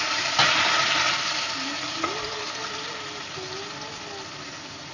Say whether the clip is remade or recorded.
recorded